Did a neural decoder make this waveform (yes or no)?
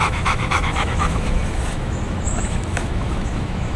yes